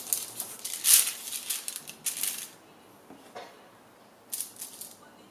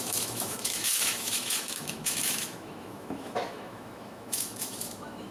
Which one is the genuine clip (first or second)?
first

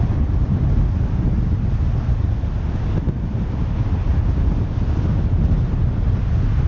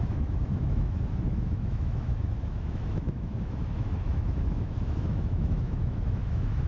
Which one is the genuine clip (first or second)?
first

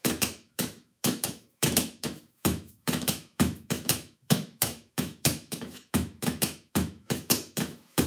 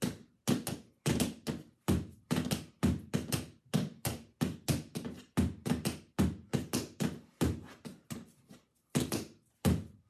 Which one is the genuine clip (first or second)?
second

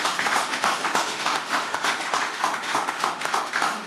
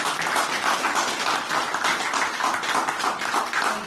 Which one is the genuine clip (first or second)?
second